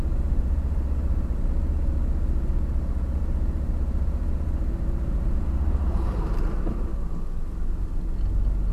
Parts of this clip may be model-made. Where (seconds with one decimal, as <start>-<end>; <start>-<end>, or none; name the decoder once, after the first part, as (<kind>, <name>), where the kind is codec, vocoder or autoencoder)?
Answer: 0.0-6.9 (vocoder, BigVGAN v2)